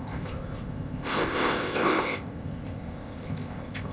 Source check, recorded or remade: remade